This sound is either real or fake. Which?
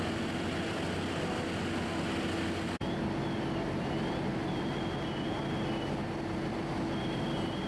real